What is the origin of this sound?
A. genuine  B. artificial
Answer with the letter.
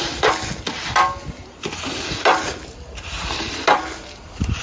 A